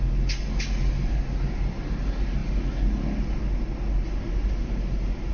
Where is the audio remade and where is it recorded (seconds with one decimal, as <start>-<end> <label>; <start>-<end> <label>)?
0.0-5.3 recorded